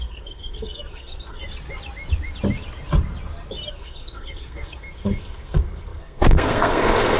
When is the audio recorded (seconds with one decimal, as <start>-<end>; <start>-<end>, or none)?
1.4-3.7